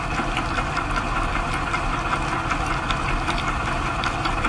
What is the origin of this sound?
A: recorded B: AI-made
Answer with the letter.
A